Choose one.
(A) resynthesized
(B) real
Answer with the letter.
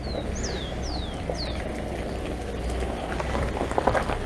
B